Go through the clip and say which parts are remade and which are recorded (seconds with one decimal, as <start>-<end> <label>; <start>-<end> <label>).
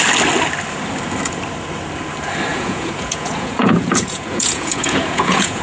0.0-2.5 recorded; 2.5-5.6 remade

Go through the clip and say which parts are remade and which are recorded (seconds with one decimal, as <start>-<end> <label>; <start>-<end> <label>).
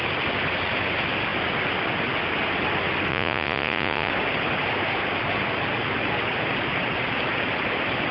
0.0-3.1 recorded; 3.1-4.1 remade; 4.1-8.1 recorded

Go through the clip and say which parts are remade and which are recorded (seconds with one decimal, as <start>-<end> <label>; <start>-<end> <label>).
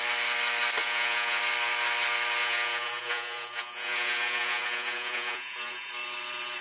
0.0-0.8 recorded; 0.8-1.4 remade; 1.4-2.4 recorded; 2.4-5.9 remade; 5.9-6.6 recorded